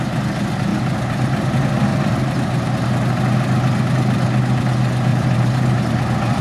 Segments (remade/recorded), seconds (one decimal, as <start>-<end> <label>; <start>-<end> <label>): 0.0-0.7 recorded; 0.7-1.4 remade; 1.4-1.9 recorded; 1.9-2.9 remade; 2.9-5.1 recorded; 5.1-5.8 remade; 5.8-6.4 recorded